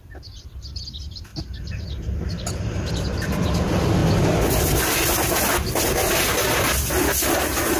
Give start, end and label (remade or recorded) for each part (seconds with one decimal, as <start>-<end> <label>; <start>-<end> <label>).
0.0-1.3 recorded; 1.3-3.3 remade; 3.3-7.8 recorded